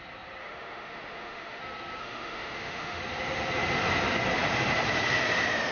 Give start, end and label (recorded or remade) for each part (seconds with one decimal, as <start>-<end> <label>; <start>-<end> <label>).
0.0-0.4 recorded; 0.4-1.6 remade; 1.6-2.0 recorded; 2.0-3.0 remade; 3.0-5.7 recorded